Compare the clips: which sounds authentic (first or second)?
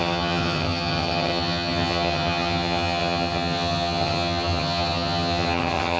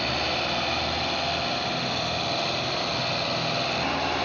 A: second